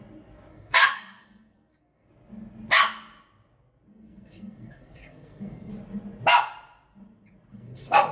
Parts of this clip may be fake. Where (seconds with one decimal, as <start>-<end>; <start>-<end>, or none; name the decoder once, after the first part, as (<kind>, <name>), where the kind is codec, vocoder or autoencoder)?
0.5-2.1 (codec, SNAC); 3.9-5.7; 7.5-8.1